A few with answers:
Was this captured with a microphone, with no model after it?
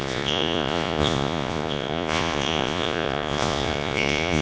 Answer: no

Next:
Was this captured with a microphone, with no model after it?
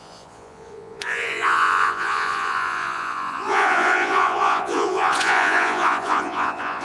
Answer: no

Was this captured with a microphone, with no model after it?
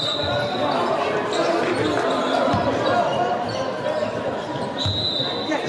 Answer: yes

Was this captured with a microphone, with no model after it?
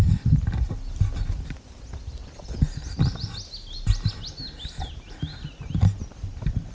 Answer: yes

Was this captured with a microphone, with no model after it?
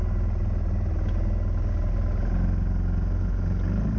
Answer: yes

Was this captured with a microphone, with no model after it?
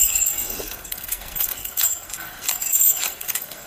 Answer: no